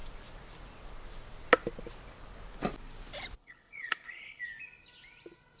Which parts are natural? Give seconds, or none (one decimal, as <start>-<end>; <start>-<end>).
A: 0.0-3.4; 4.4-5.6